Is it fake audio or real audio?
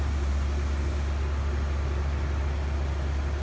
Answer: real